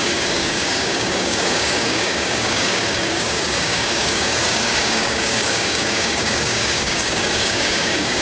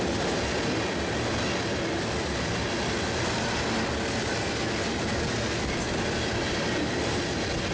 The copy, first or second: first